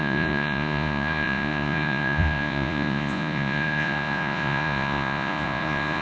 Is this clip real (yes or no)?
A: no